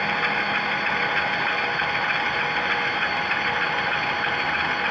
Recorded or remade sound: recorded